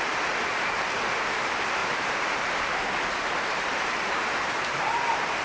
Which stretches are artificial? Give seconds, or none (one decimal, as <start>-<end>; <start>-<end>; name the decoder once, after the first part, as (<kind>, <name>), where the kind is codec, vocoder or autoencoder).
1.8-5.0 (vocoder, BigVGAN v2)